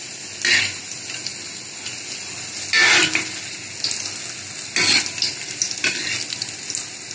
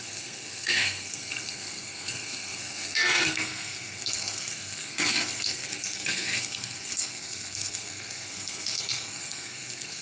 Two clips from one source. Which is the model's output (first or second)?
second